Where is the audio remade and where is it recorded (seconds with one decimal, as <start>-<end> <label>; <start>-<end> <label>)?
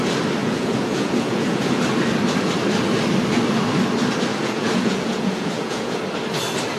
0.0-0.4 recorded; 0.4-1.8 remade; 1.8-4.3 recorded; 4.3-6.0 remade; 6.0-6.8 recorded